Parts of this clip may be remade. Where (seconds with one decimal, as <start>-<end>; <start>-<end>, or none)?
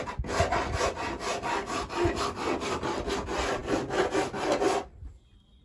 none